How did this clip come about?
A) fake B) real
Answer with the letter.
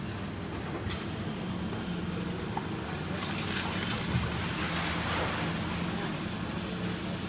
B